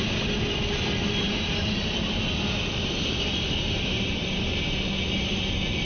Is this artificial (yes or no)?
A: no